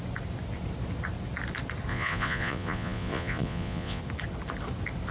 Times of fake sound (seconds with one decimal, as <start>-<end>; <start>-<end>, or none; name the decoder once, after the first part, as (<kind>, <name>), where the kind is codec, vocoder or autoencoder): 1.9-4.0 (vocoder, Vocos)